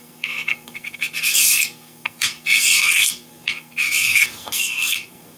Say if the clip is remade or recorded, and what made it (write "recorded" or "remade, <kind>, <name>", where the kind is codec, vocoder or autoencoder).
remade, codec, SNAC